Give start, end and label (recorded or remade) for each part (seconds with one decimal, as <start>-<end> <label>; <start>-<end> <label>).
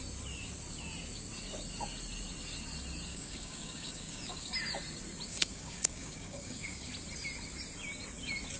0.0-3.1 recorded; 3.1-4.5 remade; 4.5-5.3 recorded; 5.3-6.9 remade; 6.9-8.6 recorded